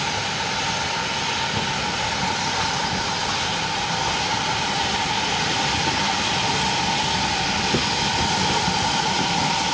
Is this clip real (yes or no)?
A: no